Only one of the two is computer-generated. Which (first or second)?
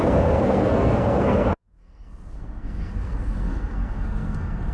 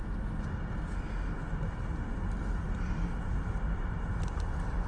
first